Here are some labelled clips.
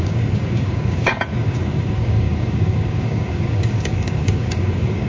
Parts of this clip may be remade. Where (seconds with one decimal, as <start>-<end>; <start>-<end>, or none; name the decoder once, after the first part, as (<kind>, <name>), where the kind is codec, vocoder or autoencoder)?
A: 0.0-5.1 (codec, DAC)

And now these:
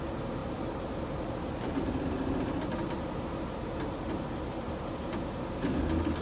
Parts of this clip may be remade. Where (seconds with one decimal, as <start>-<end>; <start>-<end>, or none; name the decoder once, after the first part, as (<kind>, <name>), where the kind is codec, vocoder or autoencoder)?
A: none

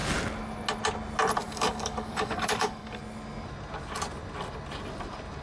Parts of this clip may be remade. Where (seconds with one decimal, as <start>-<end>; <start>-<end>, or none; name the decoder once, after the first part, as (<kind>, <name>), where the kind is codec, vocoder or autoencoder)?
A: 1.4-3.0 (codec, DAC)

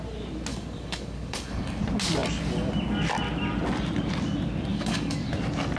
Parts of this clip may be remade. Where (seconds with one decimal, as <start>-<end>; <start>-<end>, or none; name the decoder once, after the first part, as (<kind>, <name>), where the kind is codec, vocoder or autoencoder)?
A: 0.5-1.8 (codec, DAC); 4.7-5.3

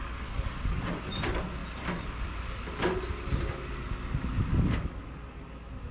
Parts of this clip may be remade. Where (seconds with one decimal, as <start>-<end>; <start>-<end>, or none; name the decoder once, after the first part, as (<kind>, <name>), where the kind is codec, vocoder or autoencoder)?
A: 0.0-0.9 (codec, DAC); 4.5-5.0

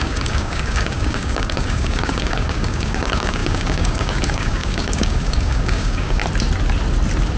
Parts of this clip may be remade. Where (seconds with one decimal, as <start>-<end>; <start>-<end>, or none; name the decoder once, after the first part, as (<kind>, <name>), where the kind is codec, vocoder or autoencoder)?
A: 0.0-6.2 (codec, DAC)